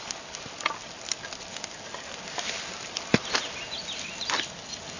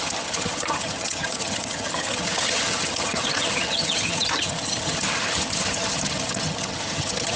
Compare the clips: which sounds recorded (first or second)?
first